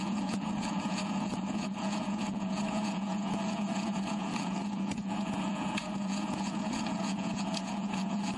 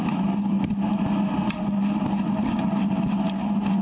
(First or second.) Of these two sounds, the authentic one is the second